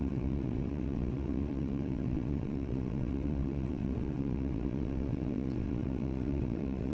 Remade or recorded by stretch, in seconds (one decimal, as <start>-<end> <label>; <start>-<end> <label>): 0.0-6.9 remade